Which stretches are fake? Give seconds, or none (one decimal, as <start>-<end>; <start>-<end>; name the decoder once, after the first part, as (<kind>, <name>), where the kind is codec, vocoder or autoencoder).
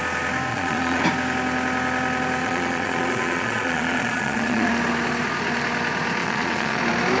0.5-1.0 (vocoder, Vocos); 2.4-4.7; 6.2-6.8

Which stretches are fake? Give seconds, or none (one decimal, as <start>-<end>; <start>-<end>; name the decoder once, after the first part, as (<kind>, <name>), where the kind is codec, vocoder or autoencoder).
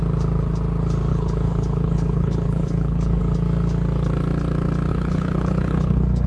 1.1-3.2 (codec, HILCodec); 4.9-6.3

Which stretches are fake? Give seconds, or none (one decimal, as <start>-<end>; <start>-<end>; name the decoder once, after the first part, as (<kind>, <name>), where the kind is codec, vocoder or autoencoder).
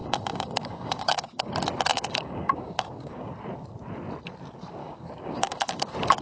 0.0-1.5 (codec, DAC); 1.9-3.3; 4.8-5.8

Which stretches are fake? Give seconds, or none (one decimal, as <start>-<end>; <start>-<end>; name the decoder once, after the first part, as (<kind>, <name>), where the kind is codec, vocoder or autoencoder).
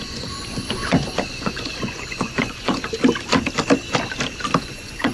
0.0-2.9 (vocoder, Vocos); 4.6-5.1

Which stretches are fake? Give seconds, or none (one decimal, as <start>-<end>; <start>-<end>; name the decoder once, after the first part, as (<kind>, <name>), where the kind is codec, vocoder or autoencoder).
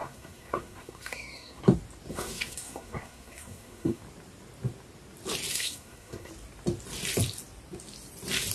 0.0-1.6 (codec, SNAC); 2.1-4.0; 5.5-6.3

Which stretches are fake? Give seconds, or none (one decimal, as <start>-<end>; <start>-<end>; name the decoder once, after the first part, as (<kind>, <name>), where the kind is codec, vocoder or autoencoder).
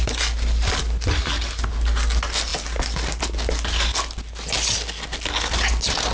none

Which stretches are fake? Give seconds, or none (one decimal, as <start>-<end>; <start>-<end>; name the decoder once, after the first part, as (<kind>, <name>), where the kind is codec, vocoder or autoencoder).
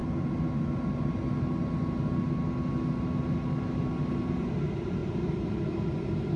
none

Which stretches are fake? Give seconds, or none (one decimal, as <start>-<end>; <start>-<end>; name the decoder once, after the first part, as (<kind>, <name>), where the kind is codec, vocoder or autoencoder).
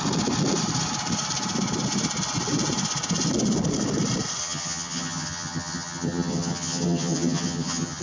4.4-8.0 (vocoder, HiFi-GAN)